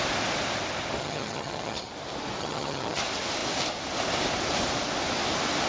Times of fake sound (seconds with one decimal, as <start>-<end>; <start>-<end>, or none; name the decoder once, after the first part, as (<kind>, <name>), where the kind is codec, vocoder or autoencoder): 1.0-1.9 (vocoder, HiFi-GAN); 2.4-3.0